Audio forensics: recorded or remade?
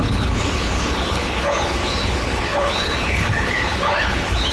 remade